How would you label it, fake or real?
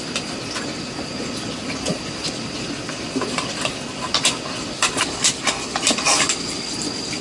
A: real